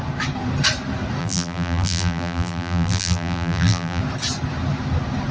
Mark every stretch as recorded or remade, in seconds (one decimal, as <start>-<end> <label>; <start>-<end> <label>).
0.0-1.2 recorded; 1.2-4.0 remade; 4.0-5.3 recorded